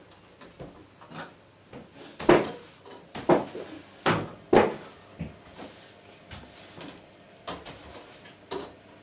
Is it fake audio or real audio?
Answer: real